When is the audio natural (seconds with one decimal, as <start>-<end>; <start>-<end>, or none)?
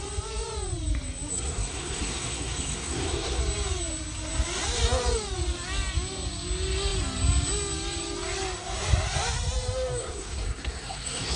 0.0-1.3; 3.4-10.0